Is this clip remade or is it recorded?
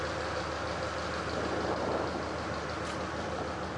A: recorded